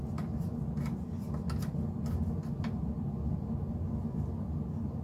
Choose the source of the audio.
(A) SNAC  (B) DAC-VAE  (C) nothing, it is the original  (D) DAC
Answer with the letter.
C